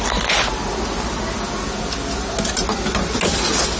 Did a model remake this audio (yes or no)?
no